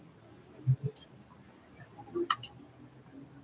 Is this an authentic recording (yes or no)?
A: yes